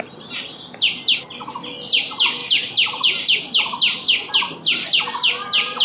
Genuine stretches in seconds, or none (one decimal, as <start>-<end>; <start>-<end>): 2.4-4.3